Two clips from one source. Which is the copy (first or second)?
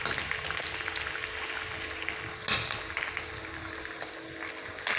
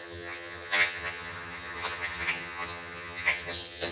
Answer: second